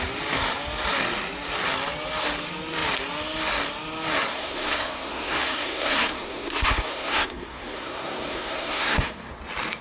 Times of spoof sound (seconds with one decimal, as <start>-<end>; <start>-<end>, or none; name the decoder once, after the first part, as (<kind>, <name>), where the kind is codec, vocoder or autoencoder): 4.3-9.3 (codec, SNAC)